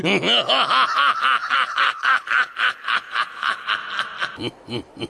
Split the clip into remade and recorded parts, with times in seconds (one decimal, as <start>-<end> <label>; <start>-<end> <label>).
0.0-1.4 recorded; 1.4-3.7 remade; 3.7-5.1 recorded

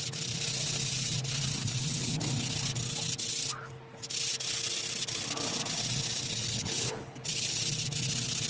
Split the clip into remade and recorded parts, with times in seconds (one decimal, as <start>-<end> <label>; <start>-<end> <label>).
0.0-1.6 recorded; 1.6-2.2 remade; 2.2-6.5 recorded; 6.5-7.6 remade; 7.6-8.5 recorded

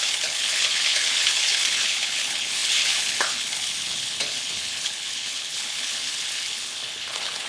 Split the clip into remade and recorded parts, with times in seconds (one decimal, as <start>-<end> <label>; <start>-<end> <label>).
0.0-7.5 remade

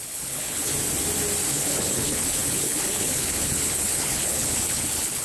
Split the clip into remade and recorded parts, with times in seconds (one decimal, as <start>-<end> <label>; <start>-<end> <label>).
0.0-0.7 remade; 0.7-1.5 recorded; 1.5-5.2 remade

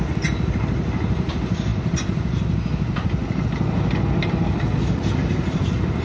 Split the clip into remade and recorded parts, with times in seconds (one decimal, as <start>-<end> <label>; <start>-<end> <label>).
0.0-6.0 recorded

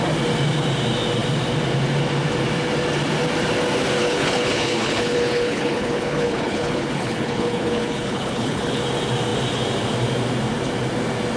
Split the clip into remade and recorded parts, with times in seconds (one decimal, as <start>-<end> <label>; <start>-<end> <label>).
0.0-4.0 recorded; 4.0-8.8 remade; 8.8-11.4 recorded

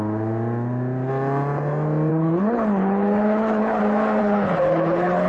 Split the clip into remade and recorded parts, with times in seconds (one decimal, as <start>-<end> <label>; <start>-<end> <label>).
0.0-2.1 recorded; 2.1-3.8 remade; 3.8-4.2 recorded; 4.2-5.3 remade